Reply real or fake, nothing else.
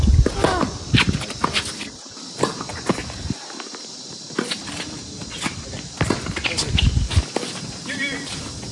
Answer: real